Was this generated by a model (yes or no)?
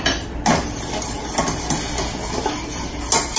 no